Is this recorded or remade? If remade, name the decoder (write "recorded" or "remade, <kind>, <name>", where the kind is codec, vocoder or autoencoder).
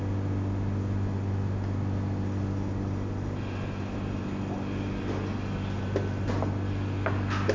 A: recorded